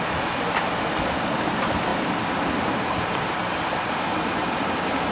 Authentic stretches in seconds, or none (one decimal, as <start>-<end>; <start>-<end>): 0.0-1.9